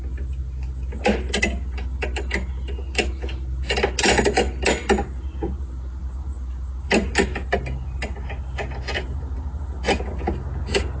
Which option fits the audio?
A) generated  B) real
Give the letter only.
B